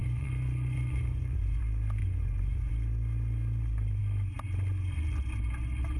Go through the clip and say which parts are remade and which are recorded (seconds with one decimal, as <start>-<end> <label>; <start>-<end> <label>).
0.0-1.6 remade; 1.6-2.0 recorded; 2.0-2.7 remade; 2.7-6.0 recorded